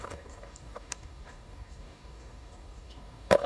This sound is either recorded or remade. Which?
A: remade